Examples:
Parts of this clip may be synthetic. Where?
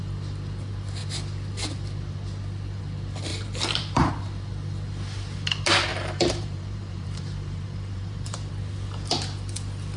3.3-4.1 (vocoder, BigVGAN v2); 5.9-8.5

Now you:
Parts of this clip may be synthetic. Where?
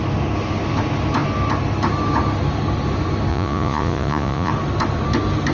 3.3-4.5 (vocoder, Vocos)